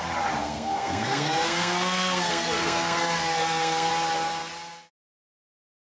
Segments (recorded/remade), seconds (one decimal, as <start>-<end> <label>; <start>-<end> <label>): 0.0-0.4 recorded; 0.4-3.9 remade; 3.9-5.8 recorded